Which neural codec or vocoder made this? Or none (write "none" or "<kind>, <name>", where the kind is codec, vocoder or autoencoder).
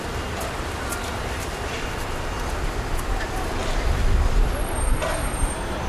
vocoder, BigVGAN v2